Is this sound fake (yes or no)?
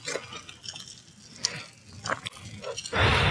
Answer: no